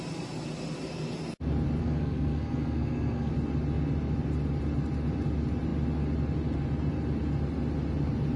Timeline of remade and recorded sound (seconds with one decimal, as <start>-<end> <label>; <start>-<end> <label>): 0.0-1.8 recorded; 1.8-3.3 remade; 3.3-8.4 recorded